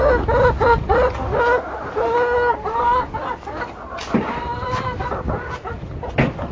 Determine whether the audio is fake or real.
real